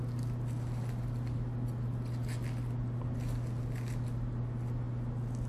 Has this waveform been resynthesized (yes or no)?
no